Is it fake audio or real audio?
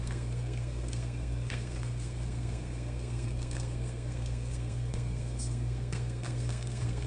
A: fake